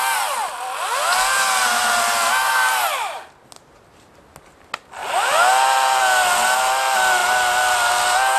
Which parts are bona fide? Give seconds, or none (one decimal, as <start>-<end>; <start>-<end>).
0.0-5.0; 6.0-7.2; 7.9-8.4